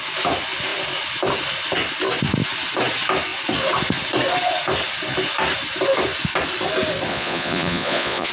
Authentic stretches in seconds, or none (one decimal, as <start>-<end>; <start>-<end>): 0.0-7.1